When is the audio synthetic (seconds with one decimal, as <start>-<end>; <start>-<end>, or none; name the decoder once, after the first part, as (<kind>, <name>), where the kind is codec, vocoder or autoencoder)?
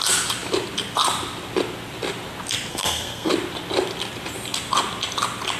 2.7-3.3 (codec, SNAC)